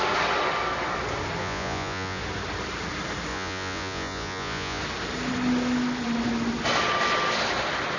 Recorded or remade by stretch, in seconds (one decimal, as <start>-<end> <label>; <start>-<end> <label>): 0.0-1.4 recorded; 1.4-2.2 remade; 2.2-3.3 recorded; 3.3-4.8 remade; 4.8-8.0 recorded